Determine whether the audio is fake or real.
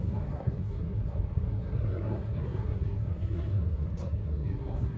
fake